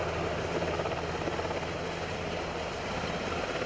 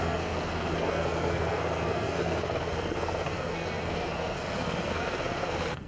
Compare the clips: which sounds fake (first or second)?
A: second